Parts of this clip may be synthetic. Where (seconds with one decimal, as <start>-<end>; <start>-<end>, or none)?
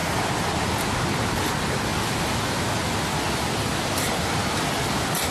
none